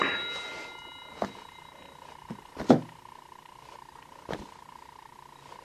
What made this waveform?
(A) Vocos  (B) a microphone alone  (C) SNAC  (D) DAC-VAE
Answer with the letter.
B